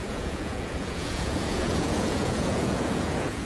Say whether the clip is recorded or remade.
remade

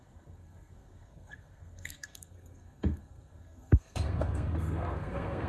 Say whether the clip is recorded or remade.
remade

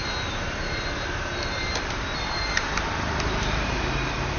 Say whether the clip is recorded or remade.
recorded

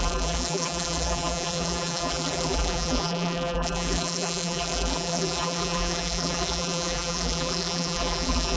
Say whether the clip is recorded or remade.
remade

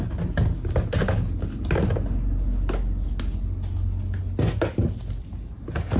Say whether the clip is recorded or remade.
recorded